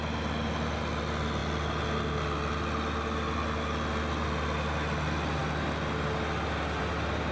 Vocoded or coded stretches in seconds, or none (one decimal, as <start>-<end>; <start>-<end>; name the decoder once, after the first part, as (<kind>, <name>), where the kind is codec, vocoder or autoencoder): none